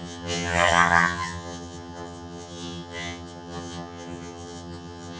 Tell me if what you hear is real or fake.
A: fake